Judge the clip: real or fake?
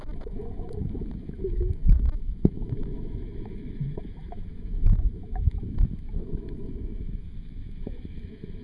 fake